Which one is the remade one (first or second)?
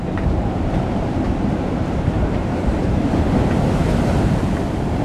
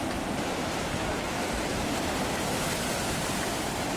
first